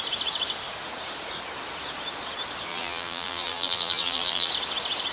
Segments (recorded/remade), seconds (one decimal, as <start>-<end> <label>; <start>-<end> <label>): 0.0-2.7 recorded; 2.7-4.5 remade; 4.5-5.1 recorded